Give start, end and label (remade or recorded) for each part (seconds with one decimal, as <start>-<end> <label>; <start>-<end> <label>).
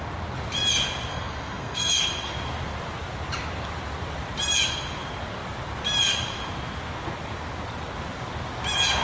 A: 0.0-1.1 recorded; 1.1-1.9 remade; 1.9-9.0 recorded